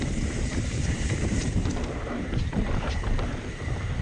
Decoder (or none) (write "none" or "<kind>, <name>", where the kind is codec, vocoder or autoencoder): vocoder, BigVGAN v2